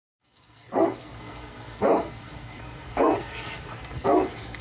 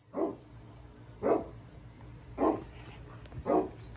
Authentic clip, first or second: second